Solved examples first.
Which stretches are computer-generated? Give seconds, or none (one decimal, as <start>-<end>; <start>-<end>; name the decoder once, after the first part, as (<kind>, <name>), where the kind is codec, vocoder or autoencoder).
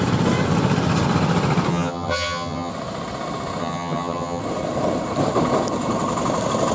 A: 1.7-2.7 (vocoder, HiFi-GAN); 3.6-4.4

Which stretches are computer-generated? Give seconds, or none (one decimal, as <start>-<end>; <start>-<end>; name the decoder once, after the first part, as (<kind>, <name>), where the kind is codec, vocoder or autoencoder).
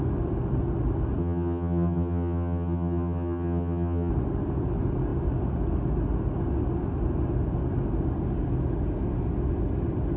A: 1.2-4.1 (vocoder, HiFi-GAN)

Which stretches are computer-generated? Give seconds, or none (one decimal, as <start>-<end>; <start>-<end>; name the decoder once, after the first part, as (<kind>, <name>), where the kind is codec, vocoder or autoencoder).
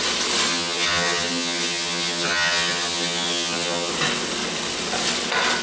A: 0.5-3.9 (vocoder, HiFi-GAN)